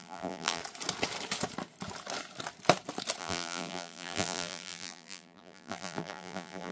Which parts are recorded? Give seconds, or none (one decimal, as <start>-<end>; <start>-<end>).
0.6-3.2